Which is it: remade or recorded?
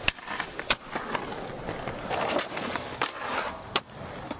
recorded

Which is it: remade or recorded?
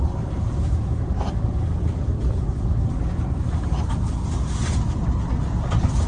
recorded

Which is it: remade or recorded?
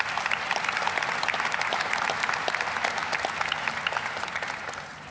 recorded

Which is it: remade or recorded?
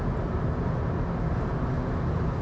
recorded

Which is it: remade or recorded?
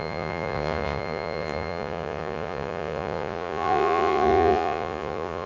remade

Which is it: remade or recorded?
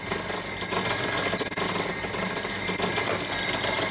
recorded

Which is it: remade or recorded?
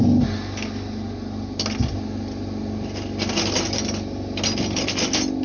recorded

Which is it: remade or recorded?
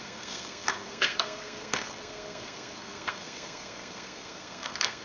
remade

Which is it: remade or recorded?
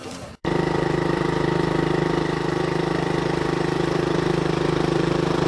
remade